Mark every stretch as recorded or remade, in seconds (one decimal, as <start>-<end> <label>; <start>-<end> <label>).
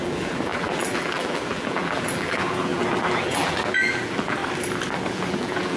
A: 0.0-4.4 remade; 4.4-5.1 recorded; 5.1-5.8 remade